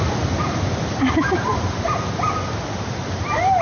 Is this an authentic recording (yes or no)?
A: no